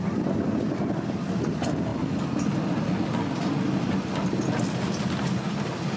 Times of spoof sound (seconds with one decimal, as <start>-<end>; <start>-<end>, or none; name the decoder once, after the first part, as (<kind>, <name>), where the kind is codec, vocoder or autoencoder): none